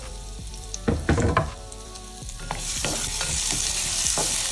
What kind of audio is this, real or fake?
fake